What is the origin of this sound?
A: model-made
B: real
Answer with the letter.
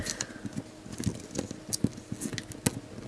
B